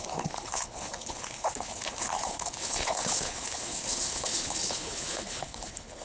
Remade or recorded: remade